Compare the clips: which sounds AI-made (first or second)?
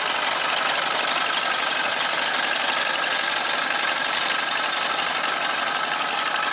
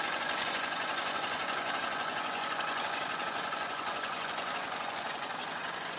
second